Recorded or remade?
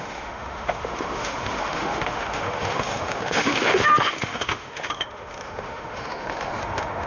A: remade